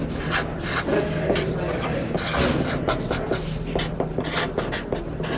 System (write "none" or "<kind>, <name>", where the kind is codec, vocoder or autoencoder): none